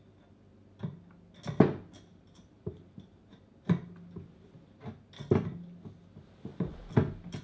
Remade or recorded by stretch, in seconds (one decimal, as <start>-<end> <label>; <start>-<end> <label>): 0.0-2.1 recorded; 2.1-3.8 remade; 3.8-7.4 recorded